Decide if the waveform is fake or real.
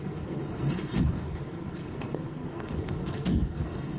fake